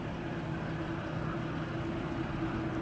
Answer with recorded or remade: recorded